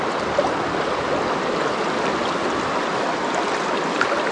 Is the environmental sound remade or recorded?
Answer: recorded